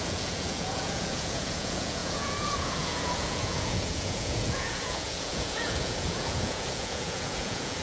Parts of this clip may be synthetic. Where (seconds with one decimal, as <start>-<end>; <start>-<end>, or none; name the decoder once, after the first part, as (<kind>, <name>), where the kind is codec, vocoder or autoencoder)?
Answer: 0.0-7.8 (vocoder, Vocos)

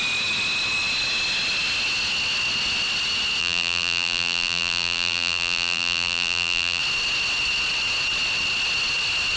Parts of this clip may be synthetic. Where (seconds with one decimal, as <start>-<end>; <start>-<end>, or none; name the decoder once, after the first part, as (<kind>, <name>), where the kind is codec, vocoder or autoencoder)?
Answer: 3.4-6.8 (vocoder, BigVGAN v2)

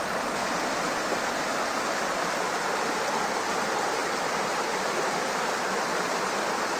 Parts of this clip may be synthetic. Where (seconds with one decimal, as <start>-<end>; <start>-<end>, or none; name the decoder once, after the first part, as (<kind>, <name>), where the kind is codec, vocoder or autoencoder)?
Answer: none

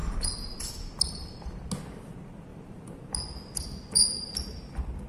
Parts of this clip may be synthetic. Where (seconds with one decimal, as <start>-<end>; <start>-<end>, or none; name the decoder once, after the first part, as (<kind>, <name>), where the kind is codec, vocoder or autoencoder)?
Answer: 0.0-0.6 (vocoder, BigVGAN v2); 2.5-3.0

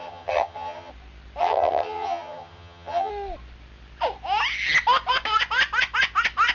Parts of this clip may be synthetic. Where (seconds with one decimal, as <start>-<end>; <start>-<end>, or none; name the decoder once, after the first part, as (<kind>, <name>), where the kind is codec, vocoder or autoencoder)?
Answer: 0.0-0.9 (vocoder, HiFi-GAN); 1.4-3.1